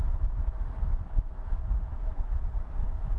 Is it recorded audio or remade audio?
remade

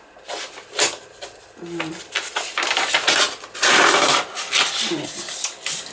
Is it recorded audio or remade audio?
recorded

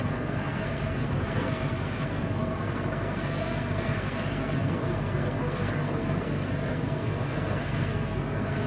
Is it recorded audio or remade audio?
remade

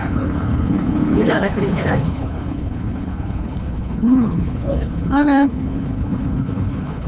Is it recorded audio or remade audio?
remade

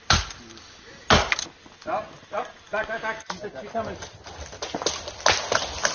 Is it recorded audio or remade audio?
recorded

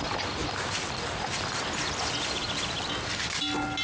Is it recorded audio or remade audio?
recorded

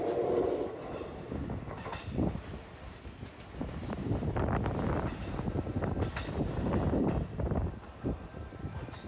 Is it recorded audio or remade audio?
recorded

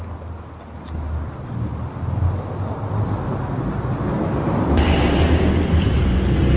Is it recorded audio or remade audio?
recorded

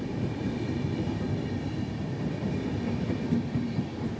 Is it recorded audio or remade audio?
recorded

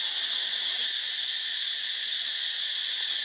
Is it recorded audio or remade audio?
recorded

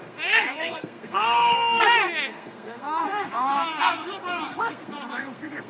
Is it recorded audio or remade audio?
remade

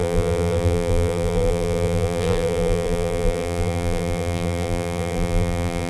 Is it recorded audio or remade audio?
remade